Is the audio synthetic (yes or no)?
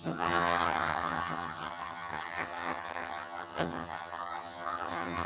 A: yes